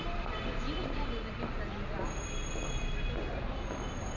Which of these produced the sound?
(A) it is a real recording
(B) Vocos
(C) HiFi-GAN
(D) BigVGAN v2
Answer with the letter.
A